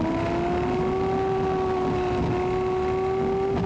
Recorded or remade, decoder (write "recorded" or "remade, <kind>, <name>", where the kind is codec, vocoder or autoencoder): recorded